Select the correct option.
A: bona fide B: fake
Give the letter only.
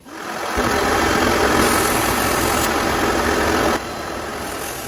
A